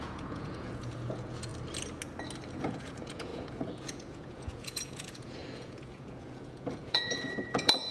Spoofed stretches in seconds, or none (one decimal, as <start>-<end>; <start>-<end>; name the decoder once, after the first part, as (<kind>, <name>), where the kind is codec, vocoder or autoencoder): 0.0-1.5 (vocoder, Vocos); 2.5-7.9